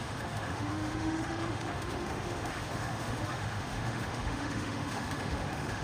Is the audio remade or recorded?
remade